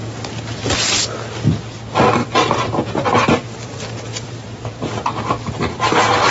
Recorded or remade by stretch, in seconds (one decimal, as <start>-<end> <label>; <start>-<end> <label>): 0.0-2.2 recorded; 2.2-6.3 remade